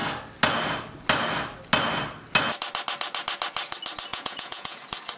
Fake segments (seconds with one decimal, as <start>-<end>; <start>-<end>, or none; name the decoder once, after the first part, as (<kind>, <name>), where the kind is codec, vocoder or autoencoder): 4.1-4.8 (vocoder, Vocos)